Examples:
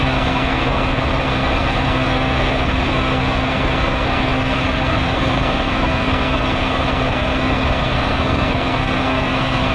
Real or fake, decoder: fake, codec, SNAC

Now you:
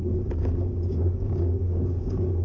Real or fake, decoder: fake, codec, DAC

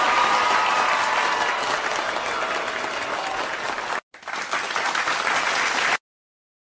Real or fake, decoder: real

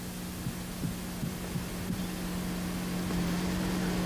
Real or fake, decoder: real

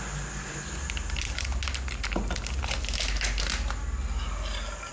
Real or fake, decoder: real